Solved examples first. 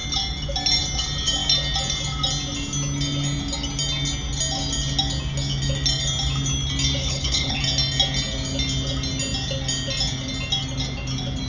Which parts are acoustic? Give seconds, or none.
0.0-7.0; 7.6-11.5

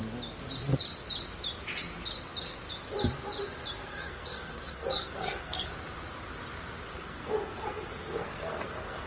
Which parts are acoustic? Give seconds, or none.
0.0-3.8; 5.7-6.9

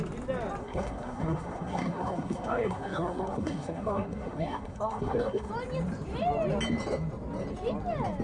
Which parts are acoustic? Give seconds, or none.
0.0-0.6; 5.5-8.2

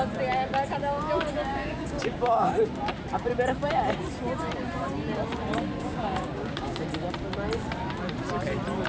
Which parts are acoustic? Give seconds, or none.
0.0-1.5; 2.5-5.8; 6.8-8.9

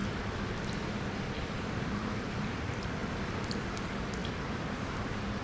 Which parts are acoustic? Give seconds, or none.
0.0-1.6; 3.0-3.5